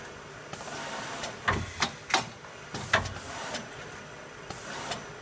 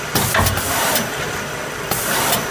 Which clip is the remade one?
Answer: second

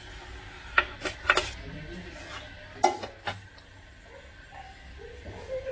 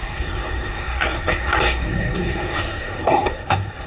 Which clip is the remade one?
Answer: second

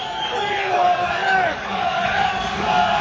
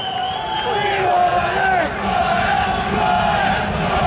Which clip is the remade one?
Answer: first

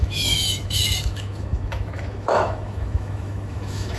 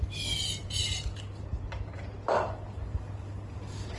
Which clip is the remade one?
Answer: first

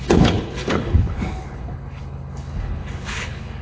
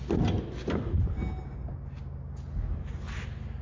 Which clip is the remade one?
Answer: first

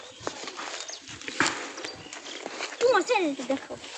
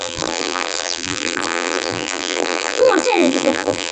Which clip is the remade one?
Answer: second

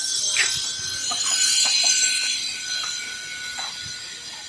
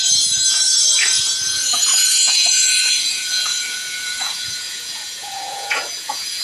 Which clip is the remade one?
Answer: second